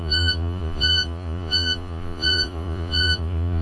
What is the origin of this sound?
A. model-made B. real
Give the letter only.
A